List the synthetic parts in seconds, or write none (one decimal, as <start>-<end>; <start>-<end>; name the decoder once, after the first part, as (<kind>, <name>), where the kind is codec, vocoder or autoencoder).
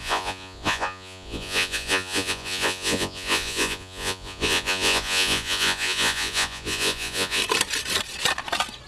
0.0-7.4 (vocoder, Vocos)